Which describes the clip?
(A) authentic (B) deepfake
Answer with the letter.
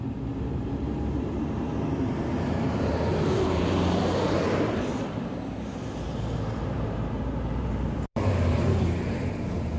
B